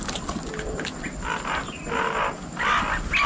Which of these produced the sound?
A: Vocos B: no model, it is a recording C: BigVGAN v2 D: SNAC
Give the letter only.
B